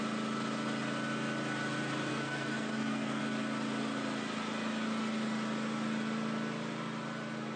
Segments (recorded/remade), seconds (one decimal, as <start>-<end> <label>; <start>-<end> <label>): 0.0-2.1 recorded; 2.1-3.2 remade; 3.2-7.6 recorded